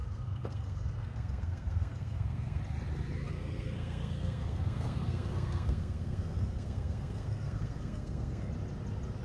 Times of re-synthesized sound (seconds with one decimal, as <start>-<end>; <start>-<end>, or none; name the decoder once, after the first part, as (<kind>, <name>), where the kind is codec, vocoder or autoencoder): 0.0-2.6 (codec, SNAC); 3.3-8.5